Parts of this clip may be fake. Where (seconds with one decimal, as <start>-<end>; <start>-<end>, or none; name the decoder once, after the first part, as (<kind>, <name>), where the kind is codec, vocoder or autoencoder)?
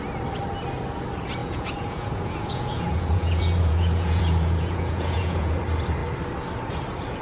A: 1.4-5.6 (vocoder, Vocos)